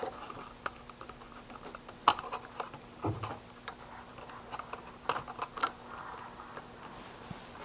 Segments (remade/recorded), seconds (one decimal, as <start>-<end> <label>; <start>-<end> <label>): 0.0-7.6 recorded